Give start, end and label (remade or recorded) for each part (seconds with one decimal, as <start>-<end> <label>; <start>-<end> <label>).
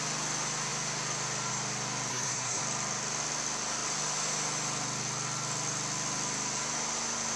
0.0-2.1 recorded; 2.1-2.6 remade; 2.6-7.4 recorded